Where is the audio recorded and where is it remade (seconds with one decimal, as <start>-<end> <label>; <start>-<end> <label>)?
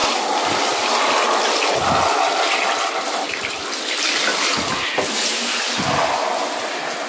0.0-7.1 recorded